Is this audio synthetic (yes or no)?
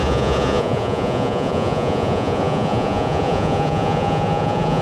yes